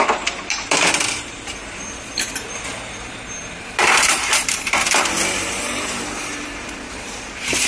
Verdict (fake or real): fake